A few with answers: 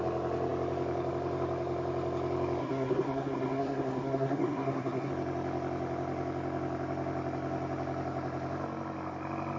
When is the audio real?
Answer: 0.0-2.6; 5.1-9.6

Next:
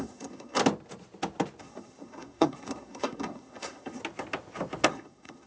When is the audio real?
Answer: 0.6-1.6; 4.0-4.9

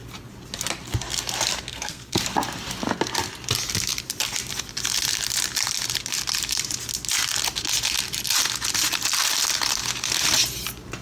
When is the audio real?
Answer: 0.0-1.7; 2.2-11.0